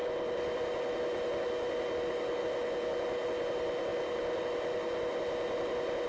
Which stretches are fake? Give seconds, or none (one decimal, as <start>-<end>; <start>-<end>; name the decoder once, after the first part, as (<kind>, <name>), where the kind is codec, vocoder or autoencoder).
none